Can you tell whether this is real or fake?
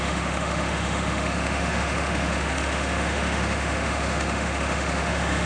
fake